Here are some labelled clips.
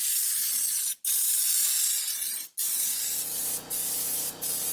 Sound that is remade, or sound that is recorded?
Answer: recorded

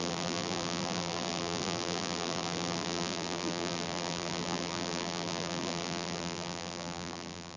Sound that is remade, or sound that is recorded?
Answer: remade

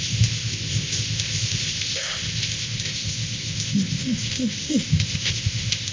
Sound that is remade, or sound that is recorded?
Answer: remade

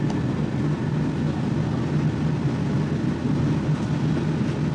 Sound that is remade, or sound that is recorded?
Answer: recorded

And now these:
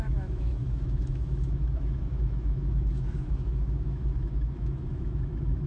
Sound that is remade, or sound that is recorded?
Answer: remade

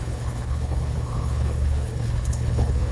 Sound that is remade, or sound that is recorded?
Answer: remade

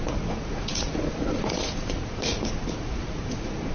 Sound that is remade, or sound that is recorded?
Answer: remade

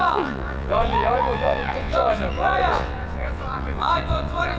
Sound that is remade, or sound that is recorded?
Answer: remade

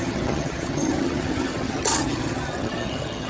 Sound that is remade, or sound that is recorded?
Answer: remade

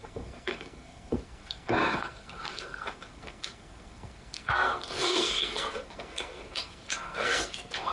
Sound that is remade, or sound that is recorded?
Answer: remade